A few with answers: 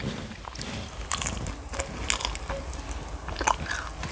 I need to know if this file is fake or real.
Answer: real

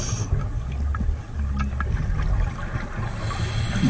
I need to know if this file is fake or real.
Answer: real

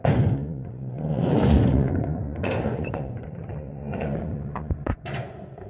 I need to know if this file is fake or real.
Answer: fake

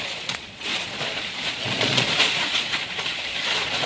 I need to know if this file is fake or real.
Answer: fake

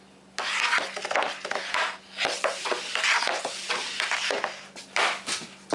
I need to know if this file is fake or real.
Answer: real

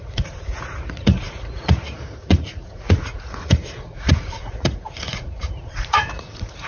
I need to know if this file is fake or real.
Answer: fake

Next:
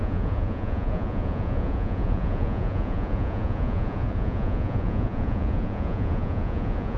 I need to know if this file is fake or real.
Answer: fake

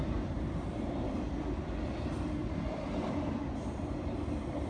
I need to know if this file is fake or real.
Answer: real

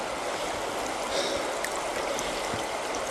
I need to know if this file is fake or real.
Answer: real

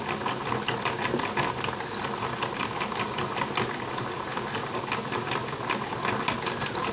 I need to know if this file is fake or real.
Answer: real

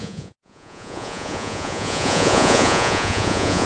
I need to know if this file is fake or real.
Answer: fake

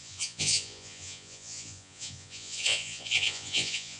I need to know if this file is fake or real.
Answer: fake